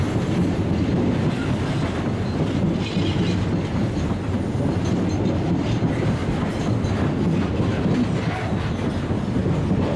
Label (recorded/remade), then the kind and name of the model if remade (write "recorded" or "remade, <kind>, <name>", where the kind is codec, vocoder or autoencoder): recorded